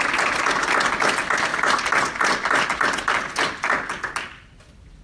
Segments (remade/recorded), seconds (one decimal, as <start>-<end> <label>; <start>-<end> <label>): 0.0-5.0 recorded